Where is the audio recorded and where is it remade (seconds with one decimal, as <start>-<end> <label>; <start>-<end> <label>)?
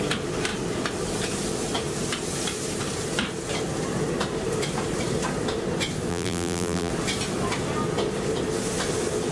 0.0-6.1 recorded; 6.1-6.9 remade; 6.9-9.3 recorded